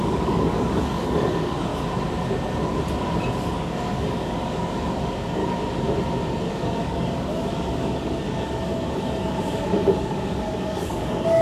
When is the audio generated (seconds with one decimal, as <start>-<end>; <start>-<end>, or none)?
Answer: 0.0-1.7; 3.4-5.4; 6.5-11.4